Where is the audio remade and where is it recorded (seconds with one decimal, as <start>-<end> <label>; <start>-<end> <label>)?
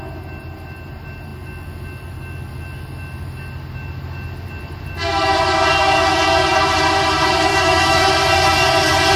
0.0-7.5 recorded; 7.5-8.1 remade; 8.1-9.2 recorded